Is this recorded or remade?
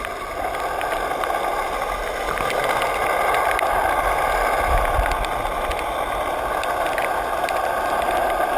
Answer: recorded